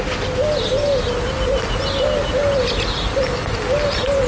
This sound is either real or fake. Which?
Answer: real